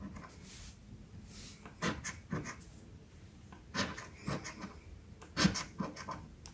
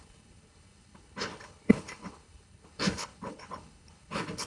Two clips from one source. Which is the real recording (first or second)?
first